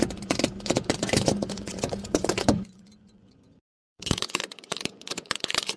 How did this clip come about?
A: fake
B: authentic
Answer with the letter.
A